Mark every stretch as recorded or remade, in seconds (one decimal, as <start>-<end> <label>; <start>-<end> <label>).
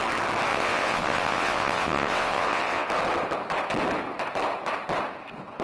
0.0-0.5 recorded; 0.5-2.9 remade; 2.9-5.6 recorded